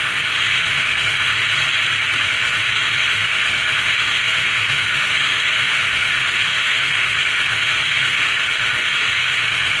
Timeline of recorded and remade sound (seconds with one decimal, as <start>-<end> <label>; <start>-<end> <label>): 0.0-1.4 remade; 1.4-2.2 recorded; 2.2-9.8 remade